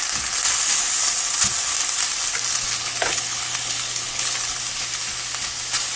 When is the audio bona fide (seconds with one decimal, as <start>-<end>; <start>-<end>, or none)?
0.0-2.8; 4.6-6.0